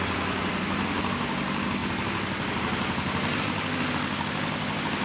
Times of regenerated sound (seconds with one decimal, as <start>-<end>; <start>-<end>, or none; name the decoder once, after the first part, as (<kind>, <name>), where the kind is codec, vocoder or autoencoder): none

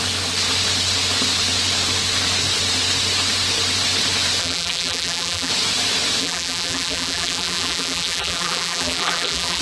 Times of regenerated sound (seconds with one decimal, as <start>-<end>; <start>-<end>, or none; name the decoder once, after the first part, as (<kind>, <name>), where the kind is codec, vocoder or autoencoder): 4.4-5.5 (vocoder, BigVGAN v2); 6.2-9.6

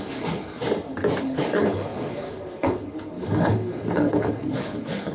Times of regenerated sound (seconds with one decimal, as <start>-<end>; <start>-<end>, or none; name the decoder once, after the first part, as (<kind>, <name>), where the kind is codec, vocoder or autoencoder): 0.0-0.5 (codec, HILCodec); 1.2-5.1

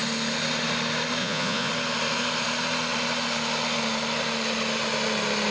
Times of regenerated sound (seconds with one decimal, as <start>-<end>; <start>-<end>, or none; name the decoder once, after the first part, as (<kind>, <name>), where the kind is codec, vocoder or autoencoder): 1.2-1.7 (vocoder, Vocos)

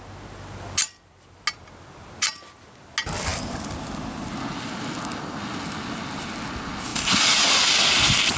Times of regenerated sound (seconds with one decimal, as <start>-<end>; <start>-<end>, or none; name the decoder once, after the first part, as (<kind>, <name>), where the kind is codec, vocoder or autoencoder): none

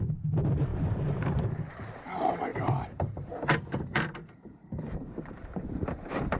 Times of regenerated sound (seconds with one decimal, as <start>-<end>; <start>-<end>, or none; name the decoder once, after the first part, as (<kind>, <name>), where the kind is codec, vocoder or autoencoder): 0.0-6.4 (vocoder, BigVGAN v2)